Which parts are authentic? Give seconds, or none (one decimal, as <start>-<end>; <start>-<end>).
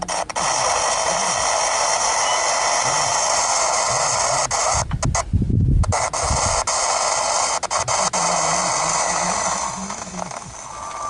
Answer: 0.0-8.9; 10.5-11.1